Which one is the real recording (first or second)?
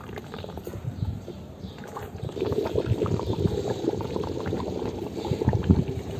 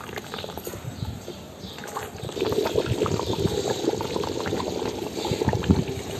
second